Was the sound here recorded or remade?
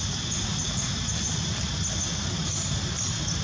recorded